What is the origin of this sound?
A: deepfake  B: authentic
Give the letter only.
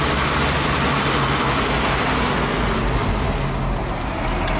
B